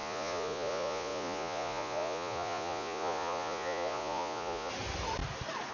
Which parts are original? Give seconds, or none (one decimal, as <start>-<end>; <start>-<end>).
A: 4.7-5.7